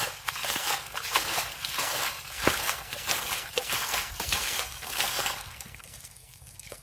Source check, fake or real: fake